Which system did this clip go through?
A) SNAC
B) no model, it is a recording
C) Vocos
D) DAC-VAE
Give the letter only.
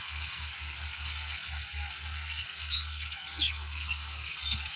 A